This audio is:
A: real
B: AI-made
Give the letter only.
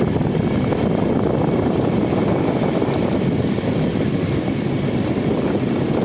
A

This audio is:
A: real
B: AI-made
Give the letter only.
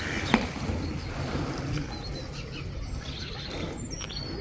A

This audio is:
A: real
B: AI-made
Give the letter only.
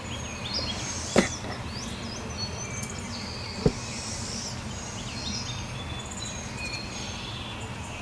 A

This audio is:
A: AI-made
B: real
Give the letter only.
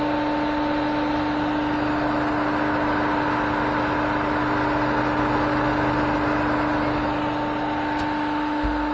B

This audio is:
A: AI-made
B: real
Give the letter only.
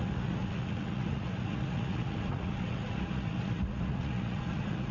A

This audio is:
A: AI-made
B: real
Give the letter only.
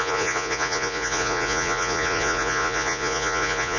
A